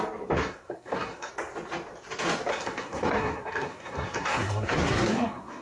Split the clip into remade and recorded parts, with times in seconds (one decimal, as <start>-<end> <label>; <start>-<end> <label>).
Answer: 0.0-0.4 recorded; 0.4-1.3 remade; 1.3-2.5 recorded; 2.5-5.6 remade